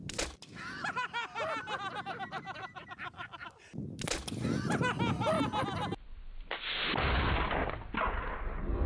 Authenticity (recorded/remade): recorded